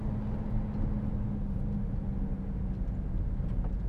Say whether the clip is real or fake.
real